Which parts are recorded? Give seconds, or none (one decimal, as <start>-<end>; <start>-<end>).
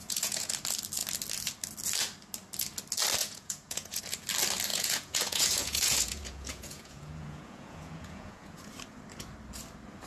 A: 0.5-3.2; 4.0-4.7; 8.7-10.1